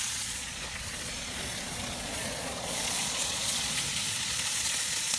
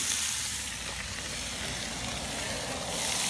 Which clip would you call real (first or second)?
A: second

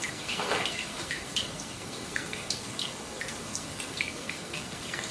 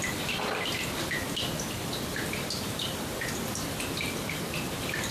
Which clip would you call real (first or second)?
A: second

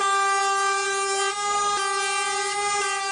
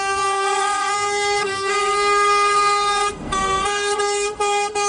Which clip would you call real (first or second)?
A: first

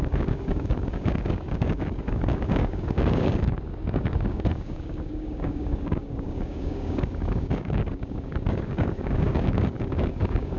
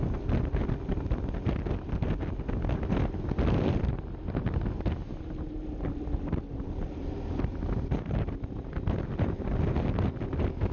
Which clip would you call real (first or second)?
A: second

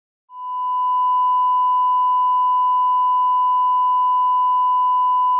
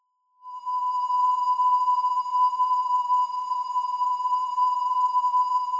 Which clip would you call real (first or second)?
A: first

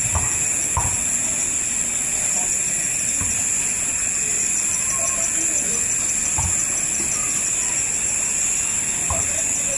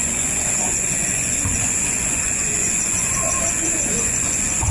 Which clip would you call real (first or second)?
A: first